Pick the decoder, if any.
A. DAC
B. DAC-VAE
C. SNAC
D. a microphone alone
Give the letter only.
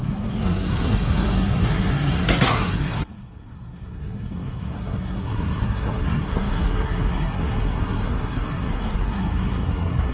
C